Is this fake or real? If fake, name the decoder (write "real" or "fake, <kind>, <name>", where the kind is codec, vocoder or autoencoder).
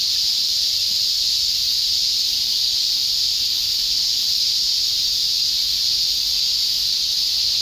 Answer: fake, vocoder, BigVGAN v2